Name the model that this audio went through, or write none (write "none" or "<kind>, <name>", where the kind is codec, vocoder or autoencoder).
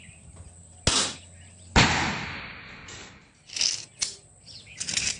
none